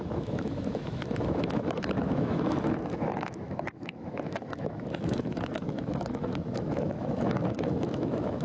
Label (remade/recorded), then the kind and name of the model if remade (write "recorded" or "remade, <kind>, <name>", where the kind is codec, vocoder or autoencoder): remade, autoencoder, DAC-VAE